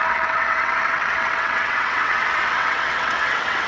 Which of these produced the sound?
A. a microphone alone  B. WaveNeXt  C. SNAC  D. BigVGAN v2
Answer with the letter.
B